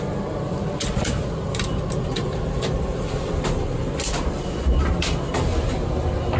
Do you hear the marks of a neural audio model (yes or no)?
no